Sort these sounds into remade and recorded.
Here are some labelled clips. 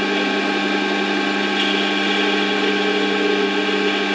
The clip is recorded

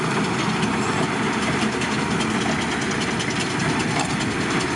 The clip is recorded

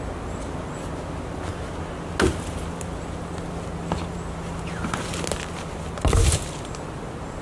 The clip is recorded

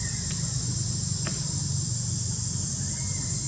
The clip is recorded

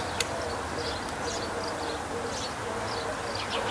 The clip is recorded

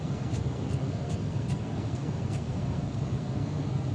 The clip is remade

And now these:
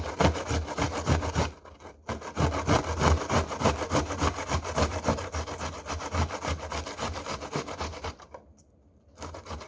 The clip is recorded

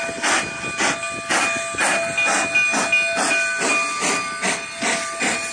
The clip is recorded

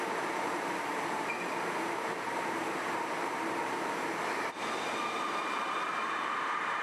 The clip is remade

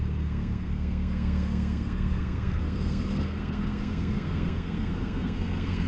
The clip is remade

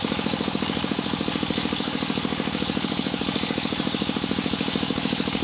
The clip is remade